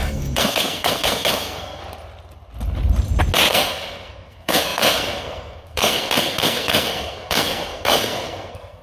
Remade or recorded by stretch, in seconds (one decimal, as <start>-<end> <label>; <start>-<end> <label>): 0.0-1.8 remade; 1.8-3.5 recorded; 3.5-8.8 remade